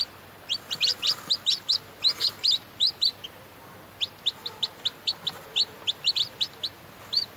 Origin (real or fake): real